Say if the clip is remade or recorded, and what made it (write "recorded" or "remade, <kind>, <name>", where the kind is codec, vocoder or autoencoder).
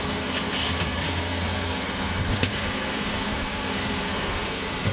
remade, codec, SNAC